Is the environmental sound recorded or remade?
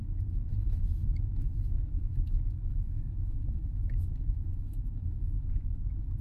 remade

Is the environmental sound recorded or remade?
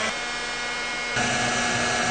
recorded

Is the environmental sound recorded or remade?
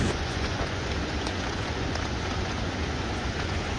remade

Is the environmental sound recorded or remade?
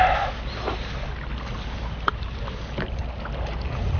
recorded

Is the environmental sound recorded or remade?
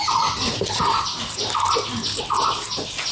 recorded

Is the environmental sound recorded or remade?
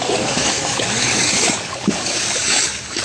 remade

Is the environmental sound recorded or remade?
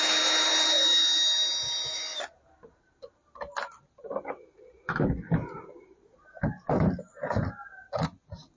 recorded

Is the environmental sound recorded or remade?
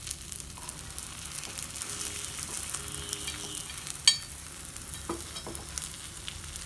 recorded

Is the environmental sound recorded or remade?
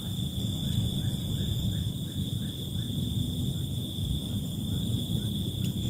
recorded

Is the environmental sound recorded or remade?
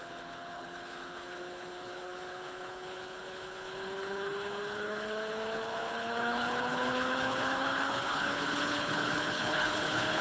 remade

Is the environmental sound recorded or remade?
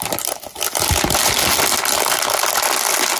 recorded